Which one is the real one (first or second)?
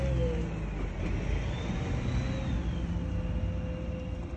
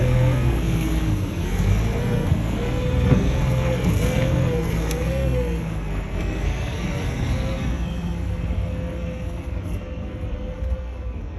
first